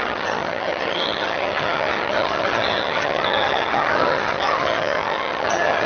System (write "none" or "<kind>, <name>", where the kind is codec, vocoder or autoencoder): vocoder, HiFi-GAN